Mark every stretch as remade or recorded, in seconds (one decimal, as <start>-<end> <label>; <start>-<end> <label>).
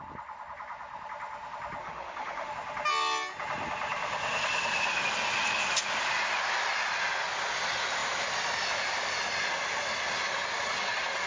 0.0-1.8 recorded; 1.8-2.5 remade; 2.5-11.3 recorded